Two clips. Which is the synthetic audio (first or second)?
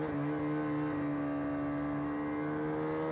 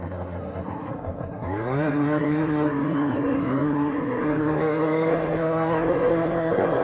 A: second